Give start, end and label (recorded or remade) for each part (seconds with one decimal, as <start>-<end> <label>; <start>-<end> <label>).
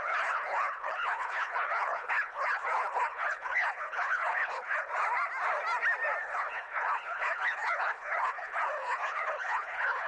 0.0-4.9 remade; 4.9-6.2 recorded; 6.2-10.1 remade